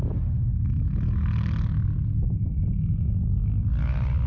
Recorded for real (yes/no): yes